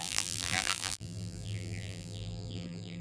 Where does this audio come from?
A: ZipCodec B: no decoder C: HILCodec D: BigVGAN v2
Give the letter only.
D